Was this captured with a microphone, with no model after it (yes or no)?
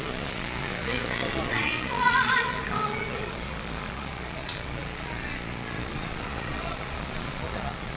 no